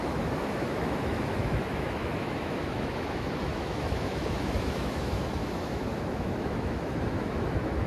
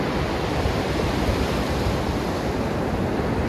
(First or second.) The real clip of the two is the second